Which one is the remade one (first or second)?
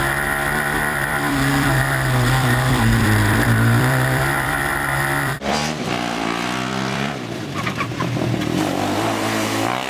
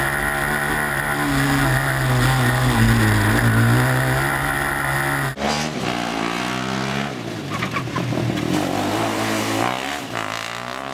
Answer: first